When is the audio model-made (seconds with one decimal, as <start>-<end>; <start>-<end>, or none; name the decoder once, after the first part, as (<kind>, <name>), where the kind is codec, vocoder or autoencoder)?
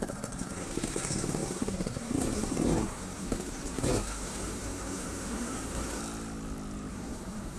0.0-6.0 (codec, SNAC); 6.9-7.6